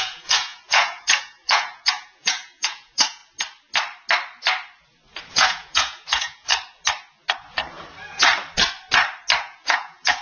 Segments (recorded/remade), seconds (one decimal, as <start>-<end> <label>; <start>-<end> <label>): 0.0-3.2 remade; 3.2-5.3 recorded; 5.3-6.5 remade; 6.5-9.4 recorded; 9.4-10.2 remade